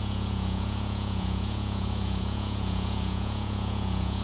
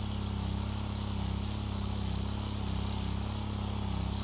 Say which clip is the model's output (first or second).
first